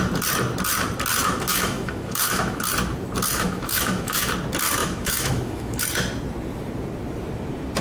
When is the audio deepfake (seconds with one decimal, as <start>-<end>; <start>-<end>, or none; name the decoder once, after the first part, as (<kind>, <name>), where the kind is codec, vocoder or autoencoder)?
1.2-2.6 (autoencoder, DAC-VAE); 3.3-4.3; 4.8-5.8